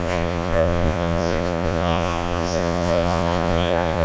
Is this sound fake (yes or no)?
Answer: yes